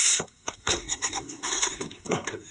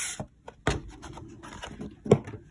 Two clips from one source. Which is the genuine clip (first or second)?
second